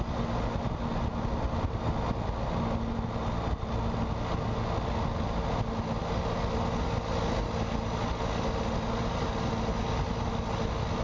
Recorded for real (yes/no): yes